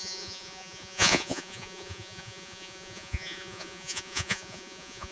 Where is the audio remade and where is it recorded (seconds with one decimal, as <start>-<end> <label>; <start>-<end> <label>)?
0.0-5.1 remade